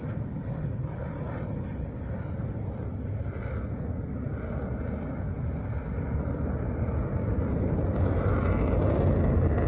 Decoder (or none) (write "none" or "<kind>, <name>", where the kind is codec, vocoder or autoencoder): none